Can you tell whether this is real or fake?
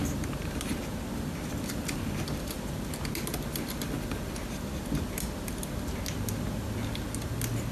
real